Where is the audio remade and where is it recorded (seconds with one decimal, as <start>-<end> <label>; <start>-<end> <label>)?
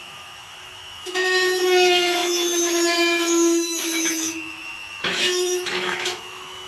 0.0-6.7 remade